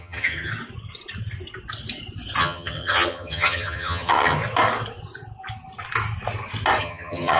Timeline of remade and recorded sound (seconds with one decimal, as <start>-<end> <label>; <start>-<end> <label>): 0.0-0.5 remade; 0.5-2.4 recorded; 2.4-4.4 remade; 4.4-6.8 recorded; 6.8-7.4 remade